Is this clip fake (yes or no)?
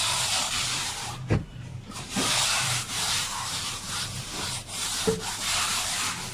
yes